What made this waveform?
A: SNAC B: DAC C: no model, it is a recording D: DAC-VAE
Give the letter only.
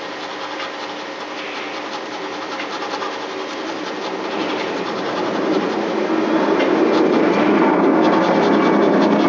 C